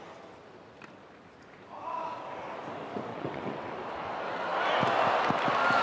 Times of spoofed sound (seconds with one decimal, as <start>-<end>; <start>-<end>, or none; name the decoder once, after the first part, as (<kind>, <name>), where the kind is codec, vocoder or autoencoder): 3.1-3.7 (vocoder, WaveNeXt)